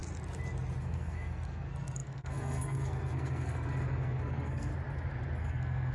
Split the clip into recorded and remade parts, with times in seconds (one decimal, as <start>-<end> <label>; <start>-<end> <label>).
0.0-0.8 recorded; 0.8-4.7 remade; 4.7-5.4 recorded; 5.4-5.9 remade